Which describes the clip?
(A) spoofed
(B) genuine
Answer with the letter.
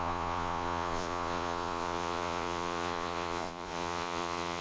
A